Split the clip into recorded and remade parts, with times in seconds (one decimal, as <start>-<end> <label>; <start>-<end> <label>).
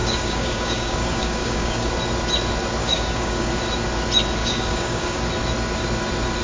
0.0-1.9 remade; 1.9-2.8 recorded; 2.8-3.5 remade; 3.5-4.4 recorded; 4.4-5.2 remade; 5.2-6.4 recorded